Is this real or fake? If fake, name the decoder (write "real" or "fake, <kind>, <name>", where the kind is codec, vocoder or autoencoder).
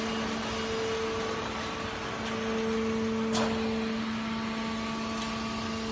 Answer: real